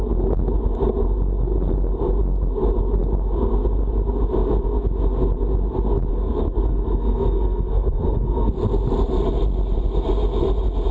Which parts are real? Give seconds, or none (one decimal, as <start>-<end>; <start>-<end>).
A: 0.0-6.1; 8.5-10.9